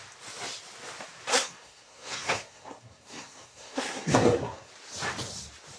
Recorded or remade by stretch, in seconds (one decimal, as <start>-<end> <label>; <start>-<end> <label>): 0.0-1.3 recorded; 1.3-4.7 remade; 4.7-5.8 recorded